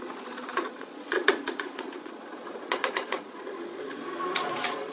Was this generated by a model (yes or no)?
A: yes